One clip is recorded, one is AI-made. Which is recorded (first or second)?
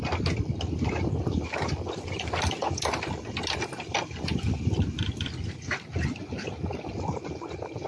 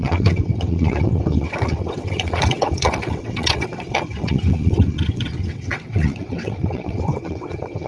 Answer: first